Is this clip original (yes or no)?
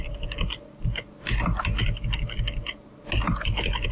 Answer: yes